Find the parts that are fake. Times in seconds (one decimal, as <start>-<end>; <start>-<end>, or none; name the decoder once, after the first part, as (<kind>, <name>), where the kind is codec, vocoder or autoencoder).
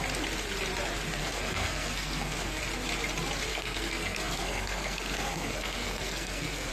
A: 1.2-2.6 (codec, SNAC); 3.5-6.7